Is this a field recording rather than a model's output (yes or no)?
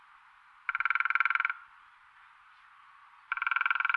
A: yes